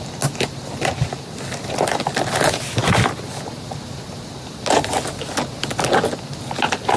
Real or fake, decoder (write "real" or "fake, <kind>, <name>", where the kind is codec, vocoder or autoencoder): real